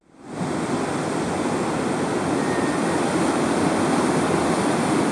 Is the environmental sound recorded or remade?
recorded